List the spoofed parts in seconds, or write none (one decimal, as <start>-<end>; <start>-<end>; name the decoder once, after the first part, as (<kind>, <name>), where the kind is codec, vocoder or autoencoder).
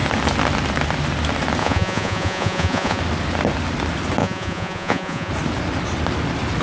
1.6-3.0 (vocoder, Vocos); 4.2-5.3